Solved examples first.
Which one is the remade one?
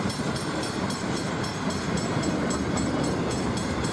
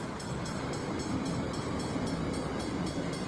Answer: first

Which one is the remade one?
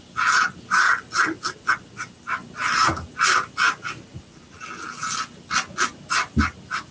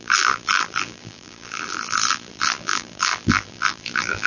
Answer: second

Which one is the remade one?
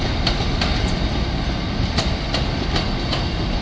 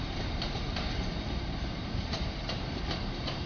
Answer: second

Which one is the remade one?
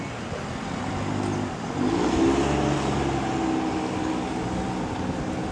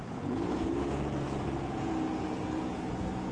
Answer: second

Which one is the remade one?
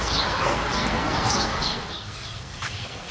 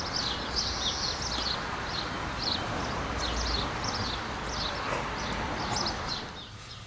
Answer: first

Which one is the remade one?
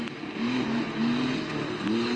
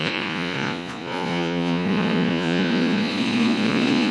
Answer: second